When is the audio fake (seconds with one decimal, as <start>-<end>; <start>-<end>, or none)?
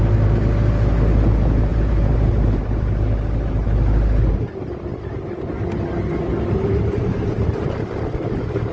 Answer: 1.7-2.9